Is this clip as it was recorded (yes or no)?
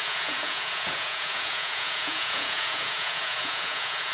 no